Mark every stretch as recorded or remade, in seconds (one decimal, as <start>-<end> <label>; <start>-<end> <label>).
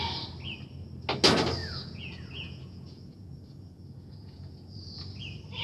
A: 0.0-1.6 recorded; 1.6-5.0 remade; 5.0-5.6 recorded